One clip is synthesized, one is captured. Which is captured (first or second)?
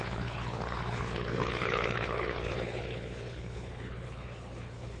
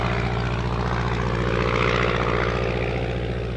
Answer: second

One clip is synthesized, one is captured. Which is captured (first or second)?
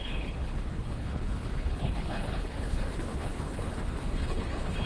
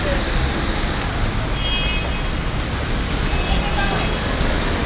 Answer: second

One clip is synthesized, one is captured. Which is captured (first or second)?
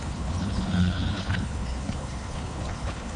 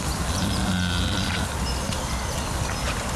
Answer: second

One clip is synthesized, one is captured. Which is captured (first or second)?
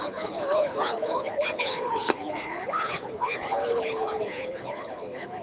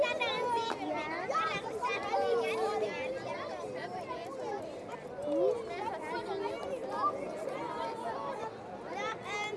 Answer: second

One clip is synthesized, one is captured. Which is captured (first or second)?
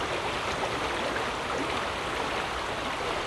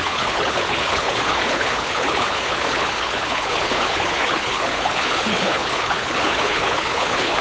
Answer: first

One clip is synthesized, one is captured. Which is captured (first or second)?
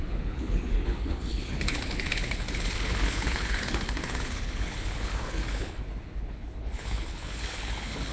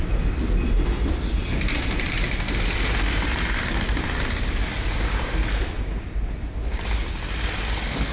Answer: second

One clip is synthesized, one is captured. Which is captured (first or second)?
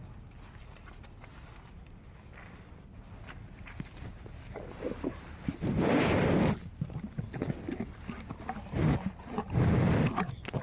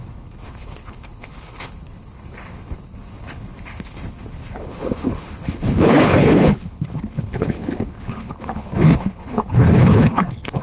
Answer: first